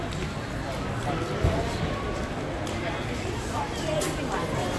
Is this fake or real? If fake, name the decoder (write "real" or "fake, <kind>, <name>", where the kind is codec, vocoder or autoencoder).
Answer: real